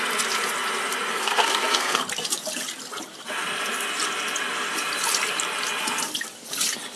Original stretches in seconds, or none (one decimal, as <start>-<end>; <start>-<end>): 0.0-1.1; 2.0-7.0